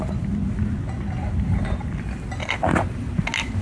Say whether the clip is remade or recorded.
recorded